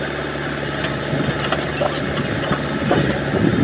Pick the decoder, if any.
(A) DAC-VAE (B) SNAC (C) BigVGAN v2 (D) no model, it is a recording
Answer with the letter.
D